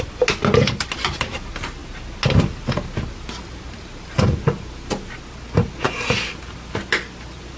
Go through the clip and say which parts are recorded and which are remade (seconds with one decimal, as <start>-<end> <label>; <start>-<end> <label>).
0.0-7.6 recorded